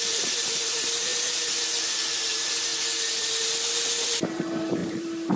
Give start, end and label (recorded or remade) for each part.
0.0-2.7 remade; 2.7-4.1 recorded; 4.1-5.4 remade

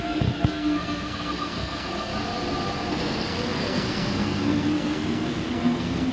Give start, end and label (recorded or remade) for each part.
0.0-2.1 remade; 2.1-2.9 recorded; 2.9-6.1 remade